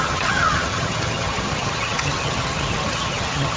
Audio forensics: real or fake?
fake